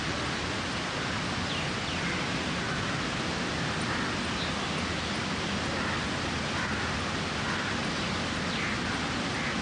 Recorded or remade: recorded